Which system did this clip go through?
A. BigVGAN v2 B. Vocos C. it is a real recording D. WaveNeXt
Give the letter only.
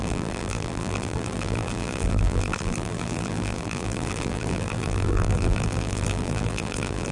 A